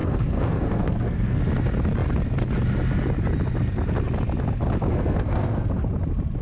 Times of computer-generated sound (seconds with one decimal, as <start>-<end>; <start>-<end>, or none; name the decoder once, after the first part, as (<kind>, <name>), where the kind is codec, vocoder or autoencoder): 0.0-1.4 (codec, SNAC); 4.9-5.7